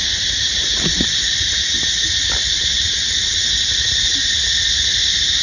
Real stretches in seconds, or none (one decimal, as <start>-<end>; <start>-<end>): 0.0-2.7; 3.4-5.4